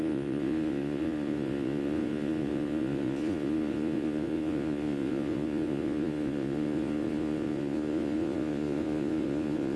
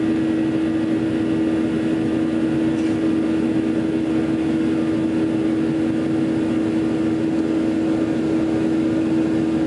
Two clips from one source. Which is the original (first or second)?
second